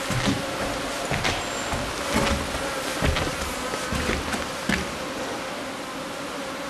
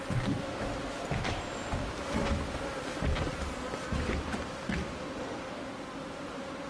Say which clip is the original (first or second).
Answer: first